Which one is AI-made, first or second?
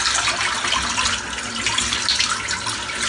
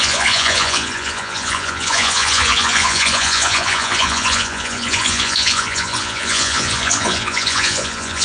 second